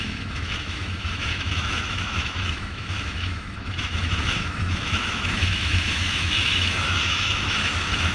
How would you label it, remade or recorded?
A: remade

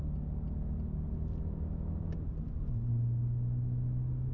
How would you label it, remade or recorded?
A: recorded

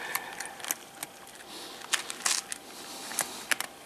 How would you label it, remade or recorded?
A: recorded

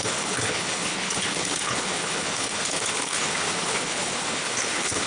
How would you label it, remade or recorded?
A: remade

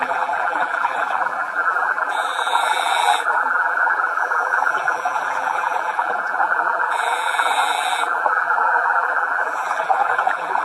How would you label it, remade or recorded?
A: remade